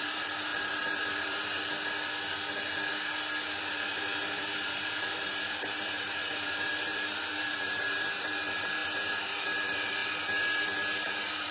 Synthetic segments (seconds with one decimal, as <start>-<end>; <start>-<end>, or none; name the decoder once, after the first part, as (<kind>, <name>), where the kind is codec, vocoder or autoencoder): 0.0-1.6 (vocoder, BigVGAN v2); 3.6-11.5